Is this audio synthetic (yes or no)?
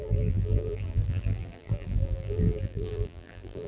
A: yes